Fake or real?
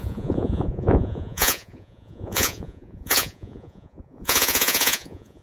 fake